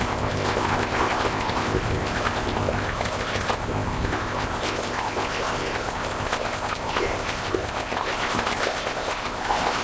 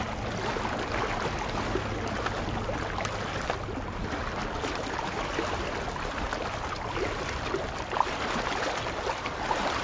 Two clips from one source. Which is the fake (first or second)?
first